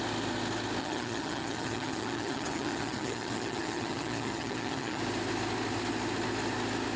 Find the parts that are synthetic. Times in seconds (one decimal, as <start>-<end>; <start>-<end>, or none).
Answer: 0.8-5.0